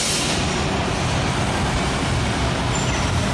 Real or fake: real